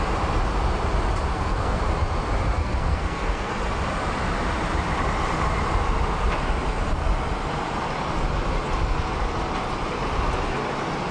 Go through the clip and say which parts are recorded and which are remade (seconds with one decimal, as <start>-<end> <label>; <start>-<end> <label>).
0.0-1.3 recorded; 1.3-1.8 remade; 1.8-2.6 recorded; 2.6-3.5 remade; 3.5-11.1 recorded